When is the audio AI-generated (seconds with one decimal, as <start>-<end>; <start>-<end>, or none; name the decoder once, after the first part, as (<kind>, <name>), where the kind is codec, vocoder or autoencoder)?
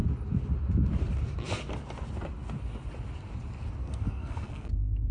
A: 3.8-5.1 (codec, SNAC)